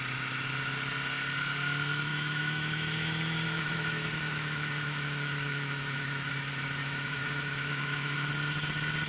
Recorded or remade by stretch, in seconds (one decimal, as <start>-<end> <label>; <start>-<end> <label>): 0.0-2.1 recorded; 2.1-6.3 remade; 6.3-6.8 recorded; 6.8-8.3 remade; 8.3-9.1 recorded